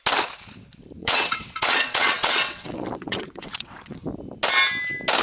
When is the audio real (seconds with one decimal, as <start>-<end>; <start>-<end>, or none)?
0.0-1.0; 4.0-5.2